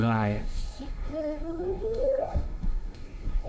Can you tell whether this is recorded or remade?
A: remade